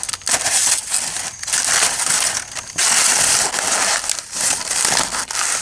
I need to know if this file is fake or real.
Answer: real